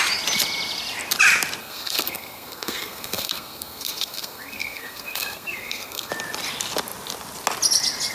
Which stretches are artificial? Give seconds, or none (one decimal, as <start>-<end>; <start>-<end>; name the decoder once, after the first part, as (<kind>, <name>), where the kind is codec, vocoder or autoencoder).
1.6-6.1 (codec, SNAC)